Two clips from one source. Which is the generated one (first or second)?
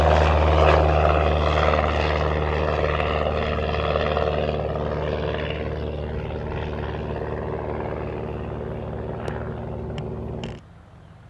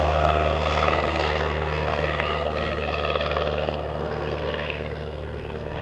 second